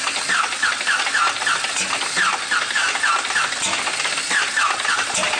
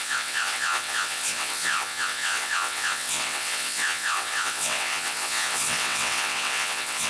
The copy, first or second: second